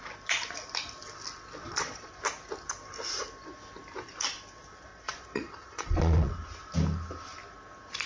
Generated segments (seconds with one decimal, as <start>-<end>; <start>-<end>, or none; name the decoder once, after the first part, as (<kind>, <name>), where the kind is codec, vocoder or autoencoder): 1.6-2.2 (vocoder, Vocos); 4.9-6.3